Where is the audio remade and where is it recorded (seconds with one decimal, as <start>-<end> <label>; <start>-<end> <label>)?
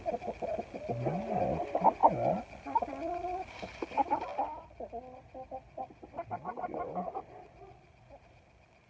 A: 0.0-8.9 recorded